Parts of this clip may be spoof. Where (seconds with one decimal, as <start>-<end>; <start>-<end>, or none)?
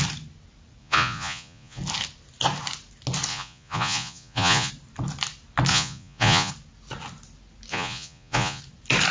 0.8-1.8; 3.3-4.7; 5.7-6.5; 7.7-8.6